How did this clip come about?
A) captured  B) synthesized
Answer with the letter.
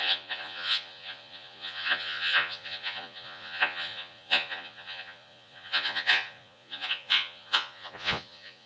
B